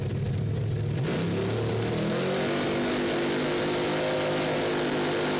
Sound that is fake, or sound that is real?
real